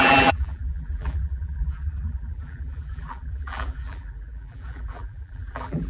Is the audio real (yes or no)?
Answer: no